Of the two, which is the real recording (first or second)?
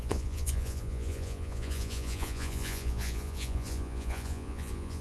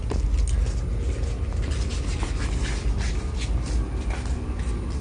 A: second